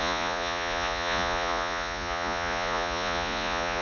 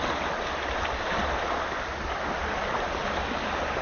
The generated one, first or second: first